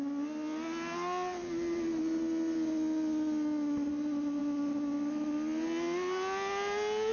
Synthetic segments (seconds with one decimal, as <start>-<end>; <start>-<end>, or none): none